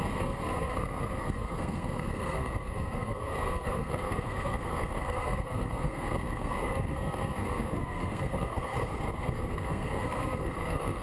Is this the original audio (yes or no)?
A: no